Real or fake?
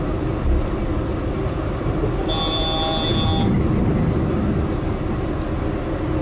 real